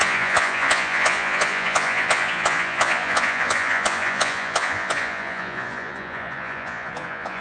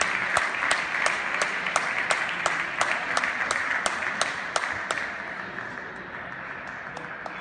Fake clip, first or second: first